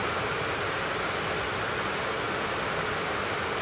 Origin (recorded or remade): recorded